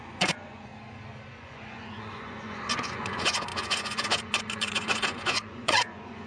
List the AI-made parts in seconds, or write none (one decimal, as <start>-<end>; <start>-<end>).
0.0-0.7; 1.3-6.3